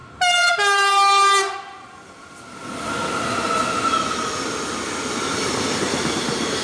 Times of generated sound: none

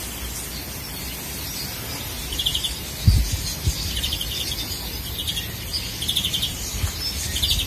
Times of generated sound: none

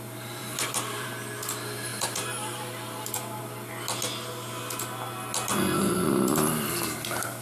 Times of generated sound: 0.4-1.1 (vocoder, BigVGAN v2); 1.9-3.4

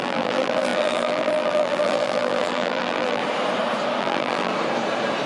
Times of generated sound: 0.0-3.2 (vocoder, BigVGAN v2); 4.0-4.5

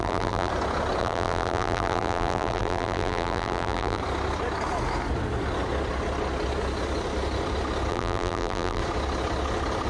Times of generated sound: 0.0-0.5 (vocoder, BigVGAN v2); 1.0-4.0; 7.9-8.8